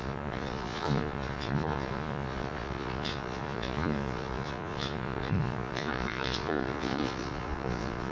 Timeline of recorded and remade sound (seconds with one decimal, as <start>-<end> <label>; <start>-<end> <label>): 0.0-8.1 remade